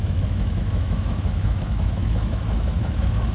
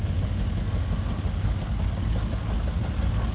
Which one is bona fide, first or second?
second